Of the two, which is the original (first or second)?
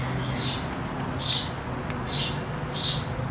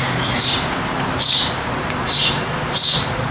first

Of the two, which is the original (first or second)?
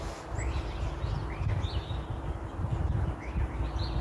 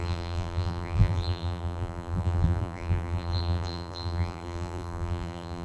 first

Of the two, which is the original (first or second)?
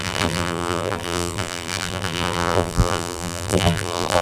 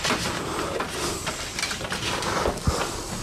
second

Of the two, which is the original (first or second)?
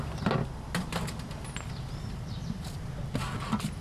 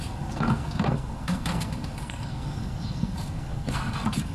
first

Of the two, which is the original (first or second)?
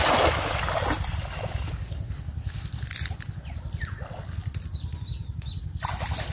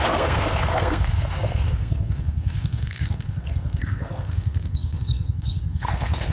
first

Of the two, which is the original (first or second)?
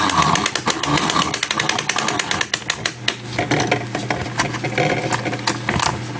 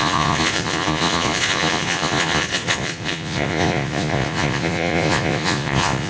first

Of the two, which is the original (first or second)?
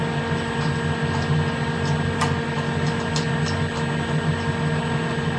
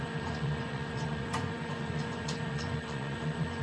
first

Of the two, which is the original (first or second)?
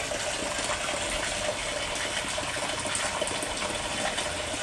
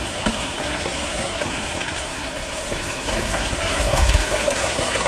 first